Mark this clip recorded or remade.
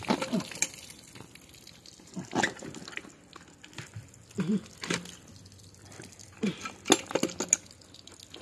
recorded